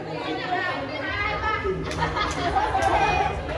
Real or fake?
real